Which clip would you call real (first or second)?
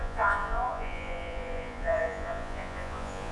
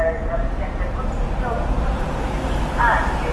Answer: second